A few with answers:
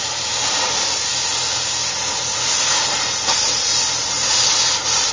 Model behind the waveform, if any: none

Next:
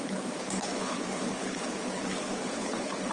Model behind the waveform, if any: codec, HILCodec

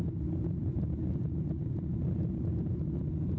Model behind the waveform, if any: none